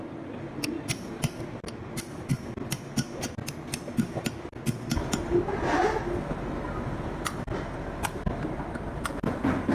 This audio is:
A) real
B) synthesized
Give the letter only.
A